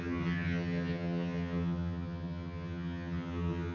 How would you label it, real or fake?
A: fake